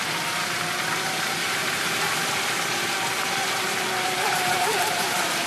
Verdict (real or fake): fake